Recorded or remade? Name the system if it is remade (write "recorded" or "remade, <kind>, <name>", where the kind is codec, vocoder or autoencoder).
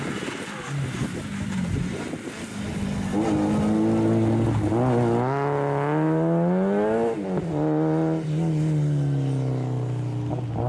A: recorded